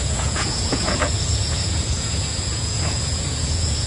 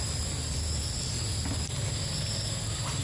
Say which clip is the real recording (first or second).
second